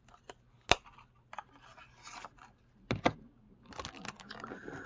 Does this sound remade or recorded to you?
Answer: recorded